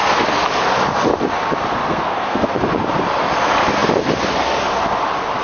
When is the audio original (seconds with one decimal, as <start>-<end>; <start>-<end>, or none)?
0.0-1.8; 2.5-5.4